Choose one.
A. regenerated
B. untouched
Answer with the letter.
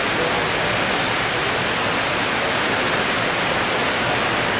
B